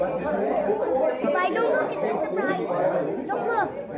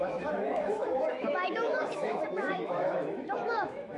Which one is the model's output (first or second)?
second